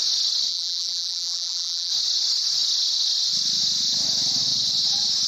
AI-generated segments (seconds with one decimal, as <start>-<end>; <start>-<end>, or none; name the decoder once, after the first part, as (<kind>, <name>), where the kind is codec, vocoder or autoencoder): 0.5-1.9 (vocoder, BigVGAN v2)